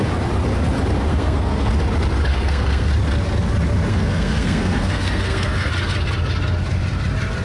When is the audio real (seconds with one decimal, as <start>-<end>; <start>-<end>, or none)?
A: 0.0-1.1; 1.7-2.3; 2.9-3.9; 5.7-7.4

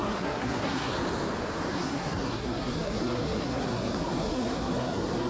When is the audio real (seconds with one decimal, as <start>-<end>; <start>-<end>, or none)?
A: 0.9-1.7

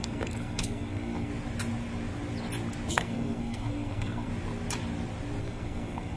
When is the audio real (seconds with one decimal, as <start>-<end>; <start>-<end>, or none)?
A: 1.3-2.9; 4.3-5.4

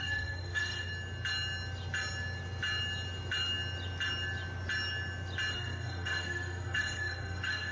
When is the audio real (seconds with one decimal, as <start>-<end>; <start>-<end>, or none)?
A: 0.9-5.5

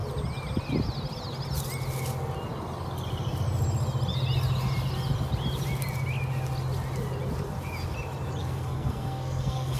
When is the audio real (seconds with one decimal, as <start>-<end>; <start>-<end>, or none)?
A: 0.0-8.4

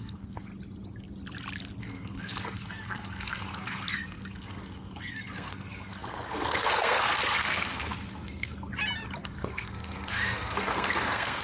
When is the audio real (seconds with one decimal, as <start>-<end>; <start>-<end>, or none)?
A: 0.5-1.8; 8.7-9.2